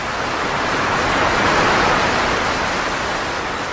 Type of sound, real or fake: real